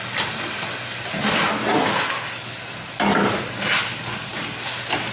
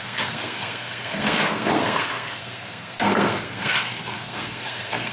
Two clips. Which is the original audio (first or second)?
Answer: first